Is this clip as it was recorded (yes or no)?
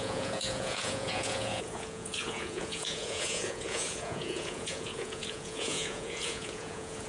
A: no